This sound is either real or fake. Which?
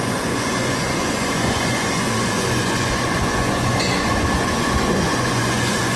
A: fake